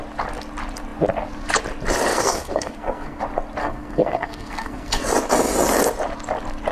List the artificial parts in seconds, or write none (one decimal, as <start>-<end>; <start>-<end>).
2.1-3.2; 3.6-5.1